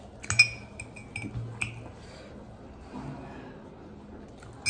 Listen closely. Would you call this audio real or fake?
real